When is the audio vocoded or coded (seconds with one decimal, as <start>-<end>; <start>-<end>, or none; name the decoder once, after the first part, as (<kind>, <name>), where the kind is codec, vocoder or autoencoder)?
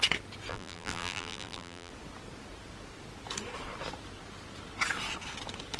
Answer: 0.5-1.9 (vocoder, BigVGAN v2)